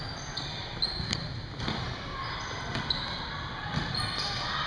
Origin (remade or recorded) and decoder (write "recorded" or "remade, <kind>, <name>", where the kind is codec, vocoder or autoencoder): recorded